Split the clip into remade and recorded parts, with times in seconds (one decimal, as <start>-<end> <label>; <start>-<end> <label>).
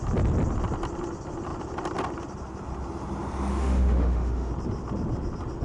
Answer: 0.0-3.5 recorded; 3.5-4.5 remade; 4.5-5.6 recorded